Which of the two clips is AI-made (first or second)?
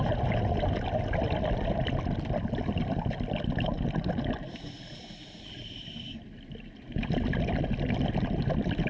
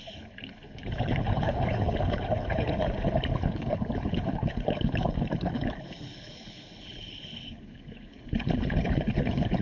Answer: second